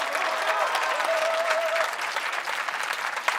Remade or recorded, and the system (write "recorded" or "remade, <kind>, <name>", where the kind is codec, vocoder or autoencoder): remade, vocoder, BigVGAN v2